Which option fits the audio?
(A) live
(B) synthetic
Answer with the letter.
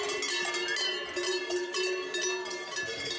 A